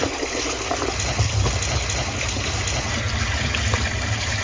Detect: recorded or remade recorded